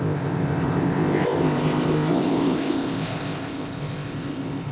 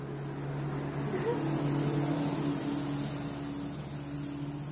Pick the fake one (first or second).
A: first